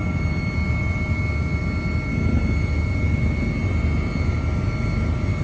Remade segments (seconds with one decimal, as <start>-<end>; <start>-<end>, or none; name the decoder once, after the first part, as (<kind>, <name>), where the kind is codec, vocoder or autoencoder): none